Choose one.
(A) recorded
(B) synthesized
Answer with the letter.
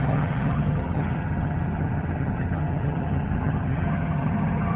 B